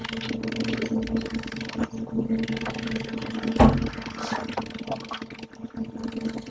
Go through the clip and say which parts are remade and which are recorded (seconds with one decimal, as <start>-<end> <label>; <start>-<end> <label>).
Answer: 0.0-6.5 recorded